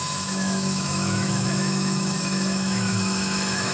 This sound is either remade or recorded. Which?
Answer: remade